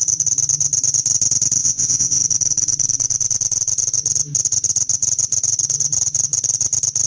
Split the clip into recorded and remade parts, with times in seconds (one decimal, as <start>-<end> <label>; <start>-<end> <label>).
0.0-1.6 recorded; 1.6-2.2 remade; 2.2-7.1 recorded